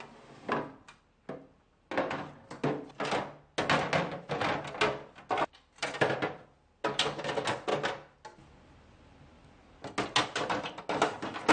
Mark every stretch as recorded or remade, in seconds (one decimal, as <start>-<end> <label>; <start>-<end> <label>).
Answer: 0.0-11.5 recorded